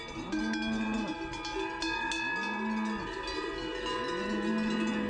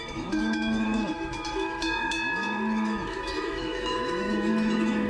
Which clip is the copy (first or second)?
second